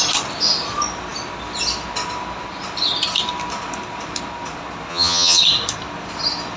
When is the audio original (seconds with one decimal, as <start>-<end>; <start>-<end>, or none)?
0.0-4.9; 5.4-6.6